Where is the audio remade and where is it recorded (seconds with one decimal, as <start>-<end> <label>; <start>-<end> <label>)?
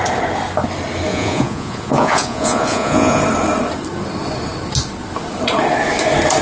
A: 0.0-1.1 recorded; 1.1-3.2 remade; 3.2-6.4 recorded